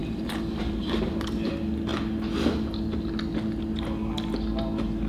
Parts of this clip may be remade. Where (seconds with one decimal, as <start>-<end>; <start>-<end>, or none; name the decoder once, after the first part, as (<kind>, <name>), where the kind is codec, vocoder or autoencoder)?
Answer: 0.0-1.5 (vocoder, BigVGAN v2)